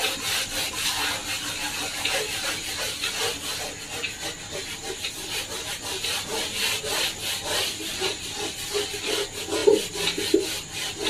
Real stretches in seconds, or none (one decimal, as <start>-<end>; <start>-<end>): 0.0-11.1